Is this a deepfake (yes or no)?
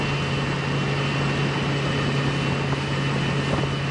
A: no